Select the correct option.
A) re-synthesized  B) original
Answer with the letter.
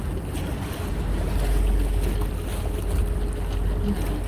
B